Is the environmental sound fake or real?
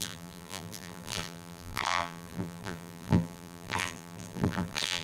fake